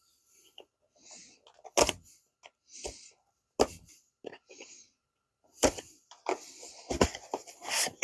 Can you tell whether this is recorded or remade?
recorded